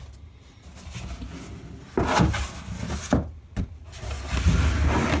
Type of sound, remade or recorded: recorded